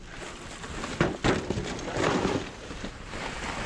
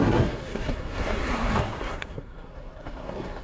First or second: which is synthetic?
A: second